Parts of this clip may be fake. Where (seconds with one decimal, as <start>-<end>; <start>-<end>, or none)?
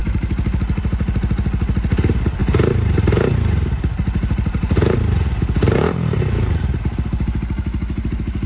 2.4-6.8